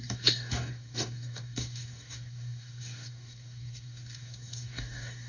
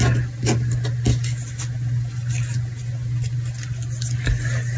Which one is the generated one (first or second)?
first